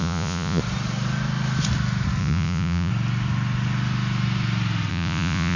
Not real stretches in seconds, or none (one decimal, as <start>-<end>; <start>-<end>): 0.0-0.6; 2.2-2.9; 4.9-5.6

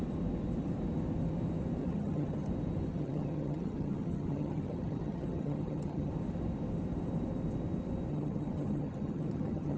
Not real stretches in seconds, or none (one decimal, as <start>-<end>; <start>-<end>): 1.8-2.5; 2.9-6.1; 8.1-9.8

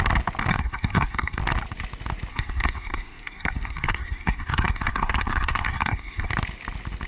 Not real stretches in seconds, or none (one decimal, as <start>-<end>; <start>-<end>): 0.5-1.4; 2.3-6.3